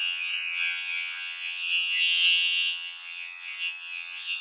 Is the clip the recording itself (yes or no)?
no